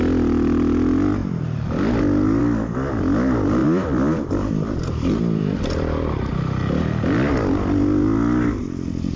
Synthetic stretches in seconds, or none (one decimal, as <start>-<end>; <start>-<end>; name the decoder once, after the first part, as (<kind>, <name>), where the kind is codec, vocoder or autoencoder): 1.2-2.4 (vocoder, BigVGAN v2); 3.6-6.3